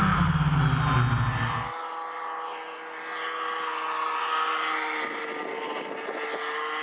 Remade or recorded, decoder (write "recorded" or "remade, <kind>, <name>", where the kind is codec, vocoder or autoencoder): recorded